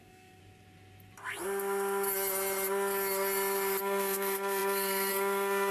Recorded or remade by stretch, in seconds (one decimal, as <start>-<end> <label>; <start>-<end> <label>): 0.0-0.4 remade; 0.4-3.8 recorded; 3.8-5.7 remade